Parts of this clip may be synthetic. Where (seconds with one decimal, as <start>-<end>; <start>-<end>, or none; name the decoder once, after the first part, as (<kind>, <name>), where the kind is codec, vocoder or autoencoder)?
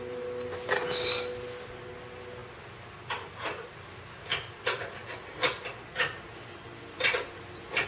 none